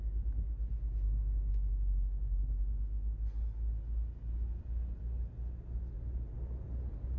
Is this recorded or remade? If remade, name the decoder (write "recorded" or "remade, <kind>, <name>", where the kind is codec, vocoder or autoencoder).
recorded